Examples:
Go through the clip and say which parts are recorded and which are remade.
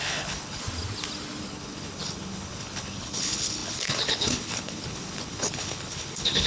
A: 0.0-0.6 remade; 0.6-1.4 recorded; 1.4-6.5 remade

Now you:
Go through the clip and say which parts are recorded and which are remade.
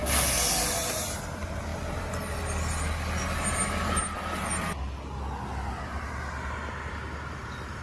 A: 0.0-7.8 recorded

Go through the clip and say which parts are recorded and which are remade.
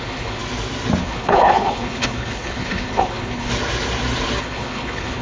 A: 0.0-0.4 remade; 0.4-1.0 recorded; 1.0-3.5 remade; 3.5-4.4 recorded; 4.4-5.2 remade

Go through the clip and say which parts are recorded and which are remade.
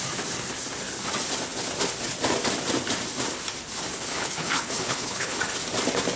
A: 0.0-3.9 recorded; 3.9-5.4 remade; 5.4-6.2 recorded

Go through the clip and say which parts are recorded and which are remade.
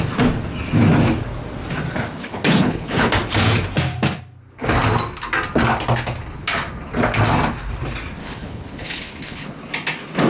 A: 0.0-2.2 recorded; 2.2-3.1 remade; 3.1-8.2 recorded; 8.2-9.5 remade; 9.5-10.3 recorded